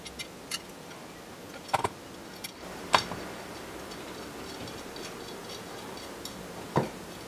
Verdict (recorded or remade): recorded